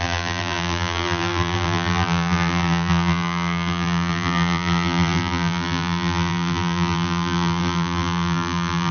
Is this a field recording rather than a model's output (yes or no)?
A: no